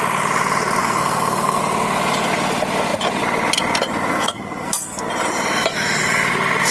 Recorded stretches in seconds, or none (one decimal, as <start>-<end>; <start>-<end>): 0.0-0.8; 1.6-4.1; 5.1-6.7